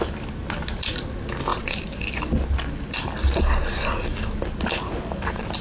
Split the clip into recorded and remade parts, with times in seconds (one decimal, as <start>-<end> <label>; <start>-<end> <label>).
0.0-1.5 recorded; 1.5-2.2 remade; 2.2-5.6 recorded